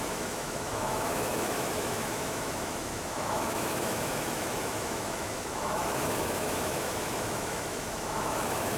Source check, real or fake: fake